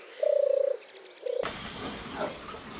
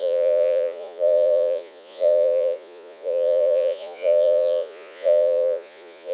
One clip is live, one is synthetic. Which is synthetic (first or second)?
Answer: second